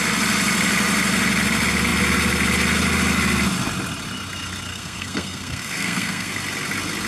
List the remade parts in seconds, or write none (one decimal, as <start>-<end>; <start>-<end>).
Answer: 4.7-6.3